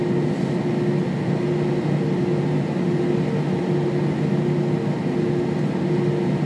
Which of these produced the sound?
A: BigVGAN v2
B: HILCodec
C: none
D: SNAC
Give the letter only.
C